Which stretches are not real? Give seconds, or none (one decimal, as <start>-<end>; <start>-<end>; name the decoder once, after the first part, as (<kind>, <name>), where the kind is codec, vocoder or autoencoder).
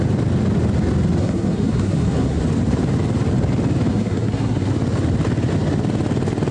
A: 1.2-2.4 (codec, SNAC); 3.9-4.7